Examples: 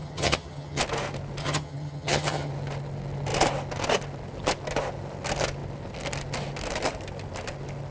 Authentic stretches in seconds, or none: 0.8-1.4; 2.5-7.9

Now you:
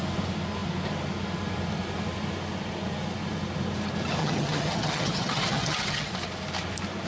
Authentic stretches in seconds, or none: 0.0-4.2; 6.1-7.1

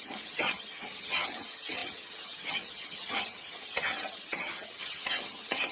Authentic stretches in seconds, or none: none

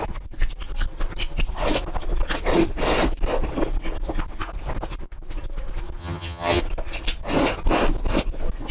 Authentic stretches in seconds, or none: 0.0-6.0; 6.6-8.7

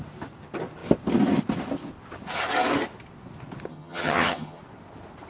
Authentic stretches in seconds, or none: 0.0-3.7; 4.6-5.3

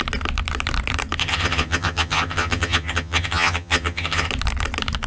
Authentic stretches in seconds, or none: 0.0-1.2; 4.3-5.1